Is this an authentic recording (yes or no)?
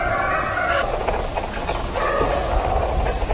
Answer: yes